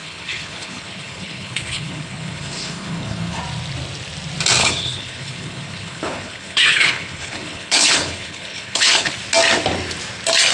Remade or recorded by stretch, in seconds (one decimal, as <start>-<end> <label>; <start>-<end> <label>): 0.0-3.4 remade; 3.4-4.6 recorded; 4.6-9.1 remade; 9.1-10.5 recorded